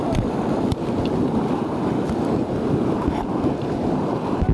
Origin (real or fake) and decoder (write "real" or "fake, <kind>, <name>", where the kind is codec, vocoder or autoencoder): real